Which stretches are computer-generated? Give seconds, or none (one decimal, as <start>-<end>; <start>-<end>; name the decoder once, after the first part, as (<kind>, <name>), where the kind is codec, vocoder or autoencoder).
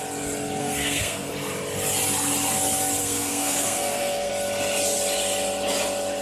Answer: 0.6-1.3 (codec, SNAC); 3.0-4.3